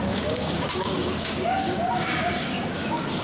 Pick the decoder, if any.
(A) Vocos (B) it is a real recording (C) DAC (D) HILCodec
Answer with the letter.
C